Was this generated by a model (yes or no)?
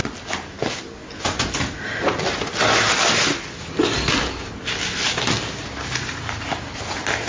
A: no